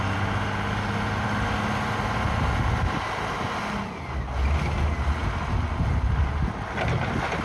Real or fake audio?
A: real